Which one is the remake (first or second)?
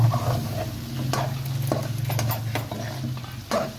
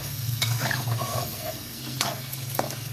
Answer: second